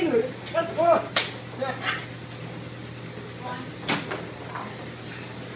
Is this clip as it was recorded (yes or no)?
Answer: yes